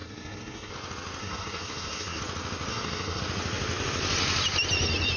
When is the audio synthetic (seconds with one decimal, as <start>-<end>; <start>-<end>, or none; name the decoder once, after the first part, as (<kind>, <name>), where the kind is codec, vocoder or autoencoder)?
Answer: 0.0-0.7 (codec, SNAC); 1.2-2.2; 2.7-3.2